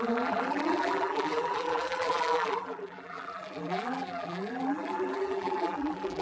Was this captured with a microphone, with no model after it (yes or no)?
no